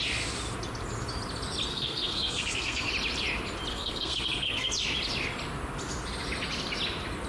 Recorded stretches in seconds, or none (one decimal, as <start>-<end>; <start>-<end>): 0.0-1.7; 2.9-3.7; 4.7-7.3